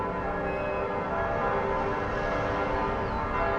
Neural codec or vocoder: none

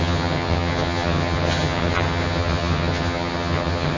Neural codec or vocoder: vocoder, HiFi-GAN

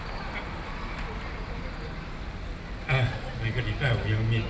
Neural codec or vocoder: none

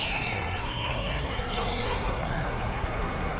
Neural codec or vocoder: codec, SNAC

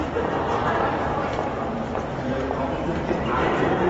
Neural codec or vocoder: vocoder, BigVGAN v2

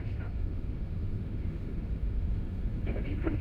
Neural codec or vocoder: autoencoder, DAC-VAE